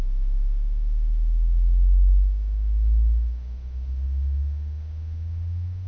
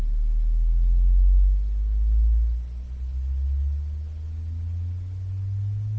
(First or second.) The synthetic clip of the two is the first